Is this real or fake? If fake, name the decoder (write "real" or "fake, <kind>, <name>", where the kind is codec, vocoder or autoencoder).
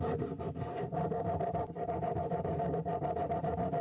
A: real